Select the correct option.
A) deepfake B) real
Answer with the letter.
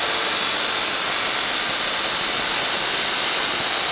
B